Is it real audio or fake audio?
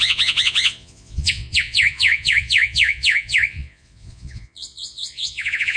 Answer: fake